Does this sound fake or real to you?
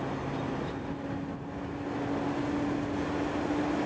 real